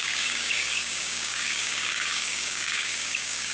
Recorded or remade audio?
remade